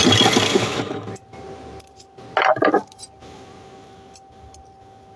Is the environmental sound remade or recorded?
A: recorded